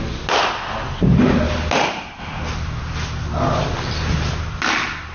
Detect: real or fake real